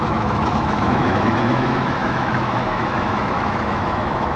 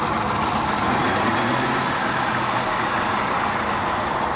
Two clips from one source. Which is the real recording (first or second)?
second